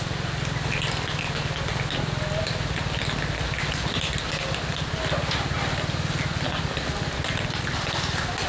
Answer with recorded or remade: recorded